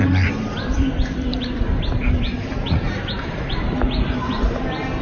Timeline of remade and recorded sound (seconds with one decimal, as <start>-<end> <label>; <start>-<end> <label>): 0.0-1.3 recorded; 1.3-4.3 remade; 4.3-5.0 recorded